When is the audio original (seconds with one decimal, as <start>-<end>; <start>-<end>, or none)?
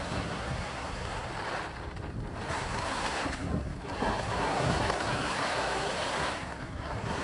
1.3-2.5